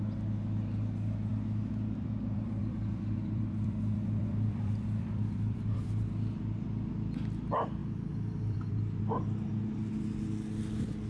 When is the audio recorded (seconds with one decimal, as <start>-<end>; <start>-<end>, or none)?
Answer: 0.0-1.3; 5.9-7.8; 9.0-11.1